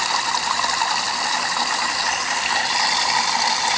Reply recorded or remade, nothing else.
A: recorded